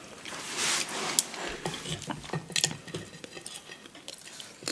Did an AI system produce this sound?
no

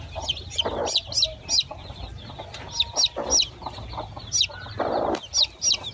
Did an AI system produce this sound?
no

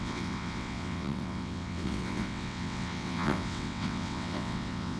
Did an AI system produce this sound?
yes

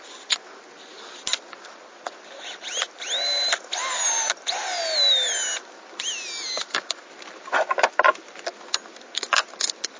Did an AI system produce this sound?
no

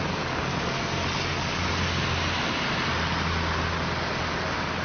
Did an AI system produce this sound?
no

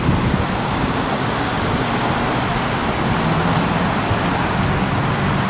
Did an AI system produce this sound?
no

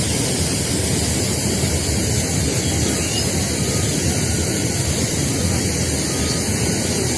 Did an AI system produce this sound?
no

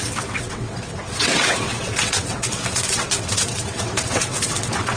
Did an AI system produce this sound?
yes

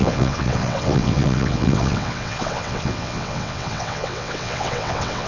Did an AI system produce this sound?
yes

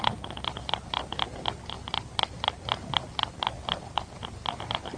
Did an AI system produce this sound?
no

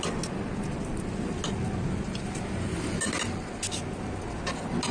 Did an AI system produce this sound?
no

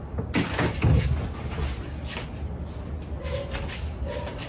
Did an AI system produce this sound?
no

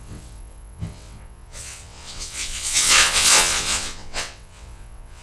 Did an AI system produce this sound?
yes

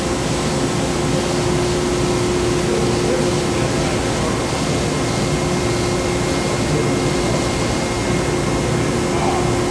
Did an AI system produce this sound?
no